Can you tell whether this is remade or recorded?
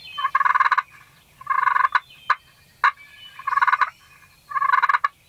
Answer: recorded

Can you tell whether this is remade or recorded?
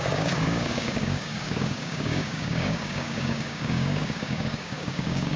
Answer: remade